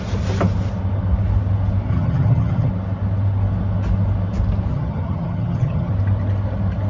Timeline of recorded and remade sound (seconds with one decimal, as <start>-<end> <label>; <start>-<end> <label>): 0.0-1.9 recorded; 1.9-2.7 remade; 2.7-4.7 recorded; 4.7-5.9 remade; 5.9-6.9 recorded